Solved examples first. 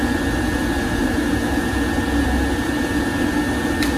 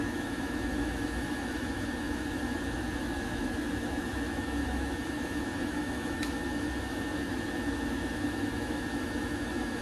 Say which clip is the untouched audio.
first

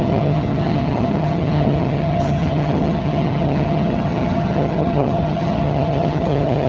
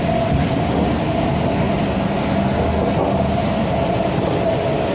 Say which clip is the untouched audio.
second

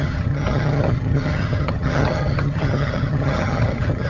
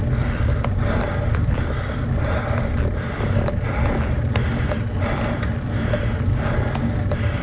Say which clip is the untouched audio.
second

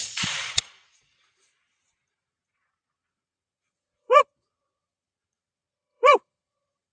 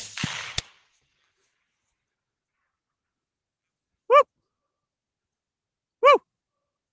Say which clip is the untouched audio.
second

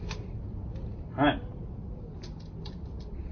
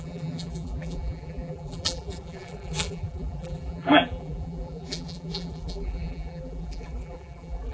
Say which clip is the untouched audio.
first